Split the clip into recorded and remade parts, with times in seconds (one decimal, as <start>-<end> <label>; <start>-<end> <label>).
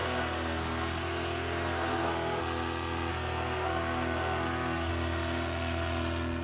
0.0-2.4 remade; 2.4-3.1 recorded; 3.1-4.9 remade; 4.9-6.4 recorded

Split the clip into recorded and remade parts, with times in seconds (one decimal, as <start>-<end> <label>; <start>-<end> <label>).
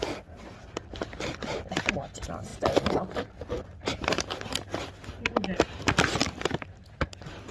0.0-6.2 recorded; 6.2-6.7 remade; 6.7-7.5 recorded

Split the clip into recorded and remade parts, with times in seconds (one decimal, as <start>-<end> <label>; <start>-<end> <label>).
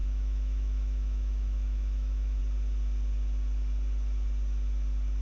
0.0-2.4 remade; 2.4-5.2 recorded